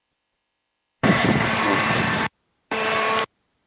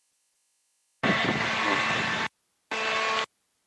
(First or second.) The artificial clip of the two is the first